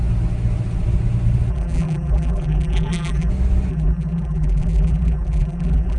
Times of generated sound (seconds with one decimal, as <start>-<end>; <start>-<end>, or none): 1.5-3.3; 3.7-6.0

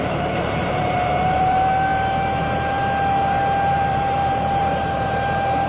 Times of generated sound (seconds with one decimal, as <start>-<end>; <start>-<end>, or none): 0.0-1.9; 3.7-5.7

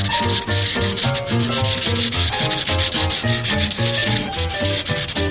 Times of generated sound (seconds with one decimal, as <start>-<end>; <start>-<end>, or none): none

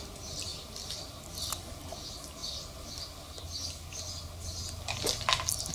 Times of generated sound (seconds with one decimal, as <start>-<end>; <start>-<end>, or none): 0.5-1.5

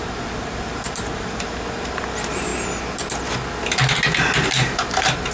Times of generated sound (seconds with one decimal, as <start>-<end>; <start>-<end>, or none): 0.0-2.5; 4.7-5.3